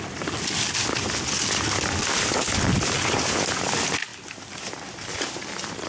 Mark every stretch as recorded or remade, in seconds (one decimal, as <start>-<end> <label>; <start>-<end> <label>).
0.0-5.9 recorded